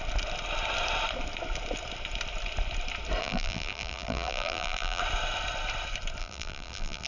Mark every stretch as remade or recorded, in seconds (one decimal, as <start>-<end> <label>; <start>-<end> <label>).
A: 0.0-3.2 recorded; 3.2-5.0 remade; 5.0-6.2 recorded; 6.2-7.1 remade